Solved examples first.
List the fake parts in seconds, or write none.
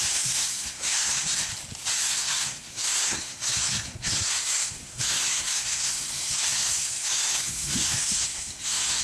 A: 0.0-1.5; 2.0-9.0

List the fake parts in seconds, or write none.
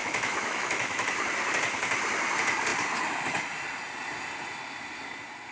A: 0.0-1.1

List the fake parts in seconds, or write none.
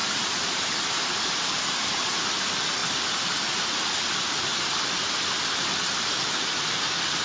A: 0.0-2.4